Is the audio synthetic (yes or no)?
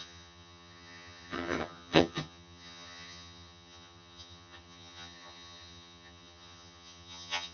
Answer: yes